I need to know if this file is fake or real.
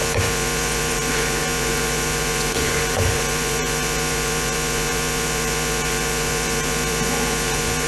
fake